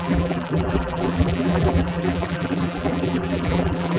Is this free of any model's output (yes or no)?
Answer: no